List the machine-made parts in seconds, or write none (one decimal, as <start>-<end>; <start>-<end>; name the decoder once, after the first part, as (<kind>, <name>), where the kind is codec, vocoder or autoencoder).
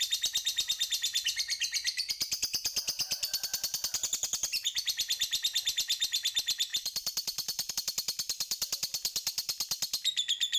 6.7-7.7 (vocoder, BigVGAN v2)